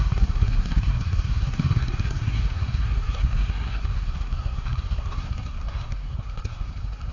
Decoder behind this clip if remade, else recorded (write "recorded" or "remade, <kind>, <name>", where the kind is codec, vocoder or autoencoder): remade, codec, SNAC